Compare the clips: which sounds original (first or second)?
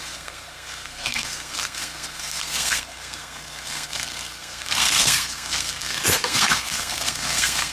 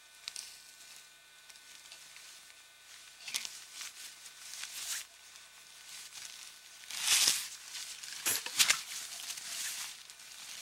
second